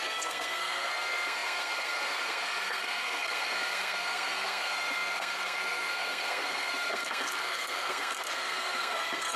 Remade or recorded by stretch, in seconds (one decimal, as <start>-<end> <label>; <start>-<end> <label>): 0.0-9.4 remade